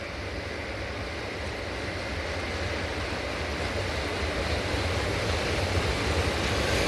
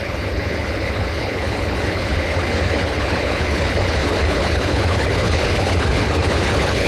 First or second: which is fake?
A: second